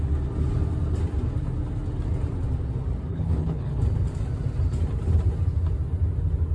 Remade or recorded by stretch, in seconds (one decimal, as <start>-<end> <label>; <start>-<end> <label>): 0.0-3.1 recorded; 3.1-3.8 remade; 3.8-6.5 recorded